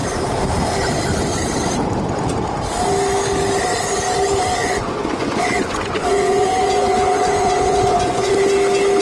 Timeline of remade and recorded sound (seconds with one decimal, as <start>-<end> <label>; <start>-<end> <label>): 0.0-4.6 recorded; 4.6-8.3 remade; 8.3-9.0 recorded